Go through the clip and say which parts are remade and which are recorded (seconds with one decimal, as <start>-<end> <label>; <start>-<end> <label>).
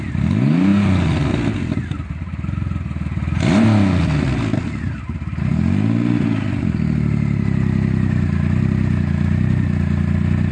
0.0-10.5 recorded